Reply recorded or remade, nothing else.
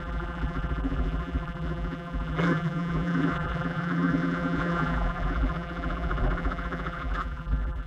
remade